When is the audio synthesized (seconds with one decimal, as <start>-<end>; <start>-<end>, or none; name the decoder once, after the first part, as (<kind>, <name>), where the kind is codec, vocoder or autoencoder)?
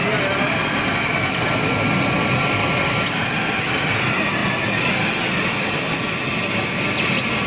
none